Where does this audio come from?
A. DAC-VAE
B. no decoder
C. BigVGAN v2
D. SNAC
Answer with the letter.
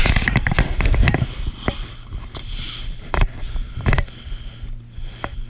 B